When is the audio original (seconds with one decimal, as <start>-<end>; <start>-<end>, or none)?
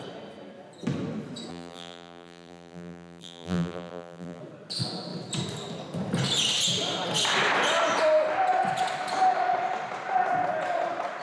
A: 0.0-1.5; 4.4-11.2